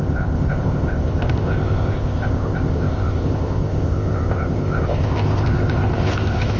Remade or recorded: remade